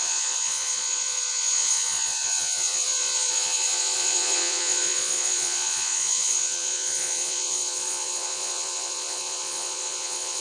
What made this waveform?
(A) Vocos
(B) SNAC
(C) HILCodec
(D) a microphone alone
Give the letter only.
A